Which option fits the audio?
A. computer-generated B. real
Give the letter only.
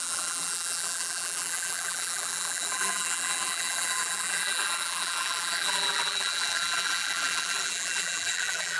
A